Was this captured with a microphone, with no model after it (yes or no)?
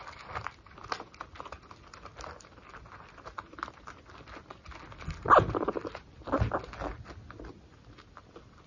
yes